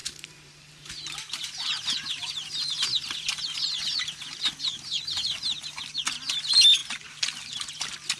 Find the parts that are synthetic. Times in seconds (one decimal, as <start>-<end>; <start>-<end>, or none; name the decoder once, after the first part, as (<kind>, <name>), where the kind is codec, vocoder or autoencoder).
0.0-0.7 (vocoder, BigVGAN v2)